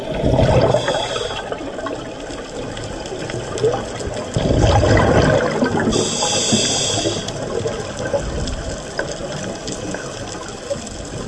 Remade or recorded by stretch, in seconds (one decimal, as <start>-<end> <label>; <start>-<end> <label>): 0.0-11.3 recorded